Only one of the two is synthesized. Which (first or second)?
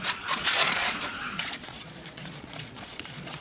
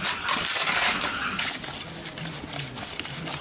first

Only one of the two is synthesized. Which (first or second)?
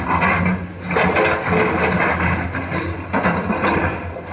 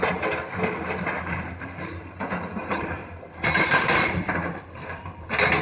second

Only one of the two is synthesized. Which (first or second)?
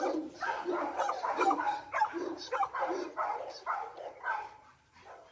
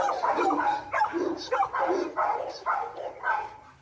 first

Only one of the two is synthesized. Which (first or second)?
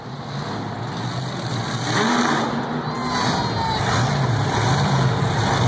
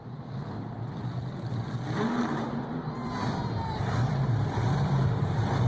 second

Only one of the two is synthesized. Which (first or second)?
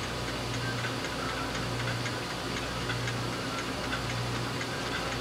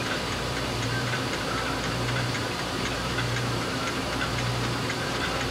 second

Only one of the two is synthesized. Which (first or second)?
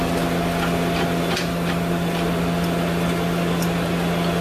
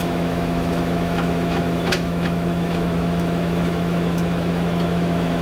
second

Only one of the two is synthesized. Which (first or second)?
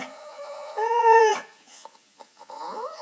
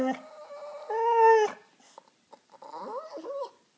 first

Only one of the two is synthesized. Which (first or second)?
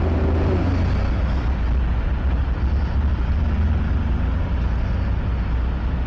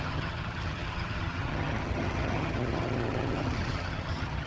second